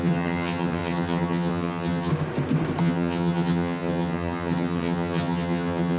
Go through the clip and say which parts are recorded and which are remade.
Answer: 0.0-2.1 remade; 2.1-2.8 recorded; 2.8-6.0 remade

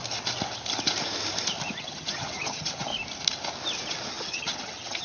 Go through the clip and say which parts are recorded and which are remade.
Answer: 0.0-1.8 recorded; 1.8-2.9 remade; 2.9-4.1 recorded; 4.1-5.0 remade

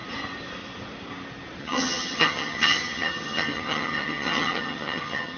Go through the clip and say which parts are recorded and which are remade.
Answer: 0.0-1.6 recorded; 1.6-5.4 remade

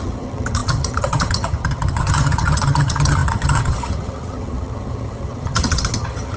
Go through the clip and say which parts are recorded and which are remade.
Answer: 0.0-6.4 remade